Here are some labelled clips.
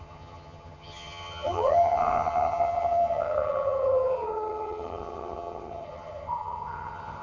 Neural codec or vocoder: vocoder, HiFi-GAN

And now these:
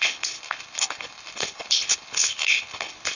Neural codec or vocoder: codec, HILCodec